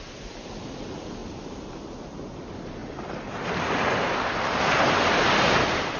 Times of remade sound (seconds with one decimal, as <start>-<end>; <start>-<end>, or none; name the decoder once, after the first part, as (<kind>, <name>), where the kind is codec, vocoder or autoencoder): none